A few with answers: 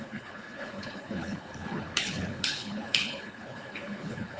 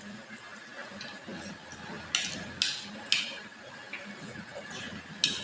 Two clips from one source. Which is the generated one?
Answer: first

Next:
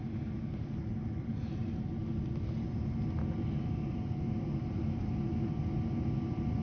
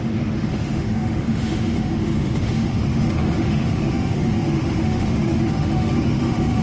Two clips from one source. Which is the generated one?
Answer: second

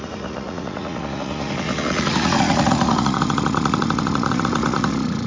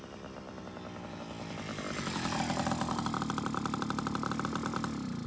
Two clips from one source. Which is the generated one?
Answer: first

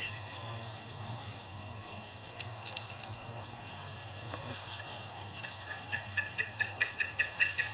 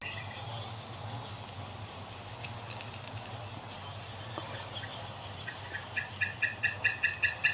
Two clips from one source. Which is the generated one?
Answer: first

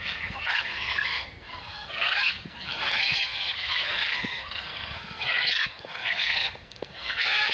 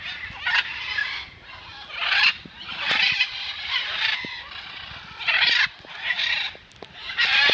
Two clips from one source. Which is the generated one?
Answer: first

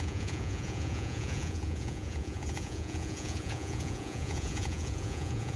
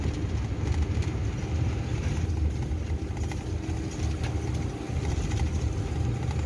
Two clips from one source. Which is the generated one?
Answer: first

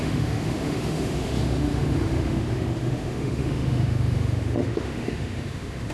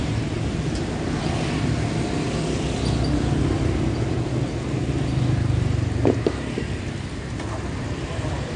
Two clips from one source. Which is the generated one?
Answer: first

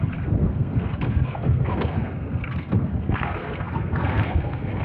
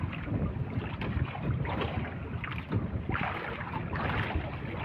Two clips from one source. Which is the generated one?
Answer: first